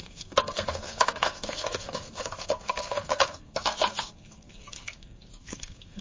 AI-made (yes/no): yes